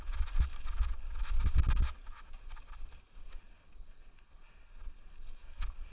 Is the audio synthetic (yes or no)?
no